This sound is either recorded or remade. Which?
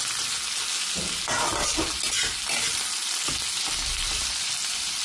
recorded